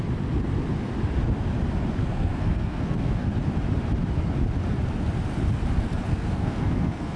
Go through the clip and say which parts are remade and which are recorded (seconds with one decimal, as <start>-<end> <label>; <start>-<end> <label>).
0.0-2.0 recorded; 2.0-3.3 remade; 3.3-6.1 recorded; 6.1-7.2 remade